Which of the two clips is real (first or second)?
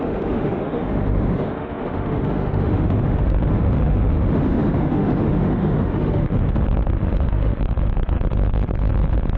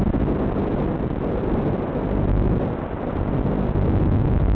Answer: second